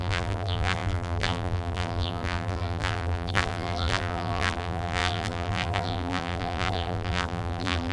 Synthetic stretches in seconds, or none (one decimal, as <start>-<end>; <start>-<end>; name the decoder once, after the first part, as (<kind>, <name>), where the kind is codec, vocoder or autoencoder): 0.0-7.9 (vocoder, BigVGAN v2)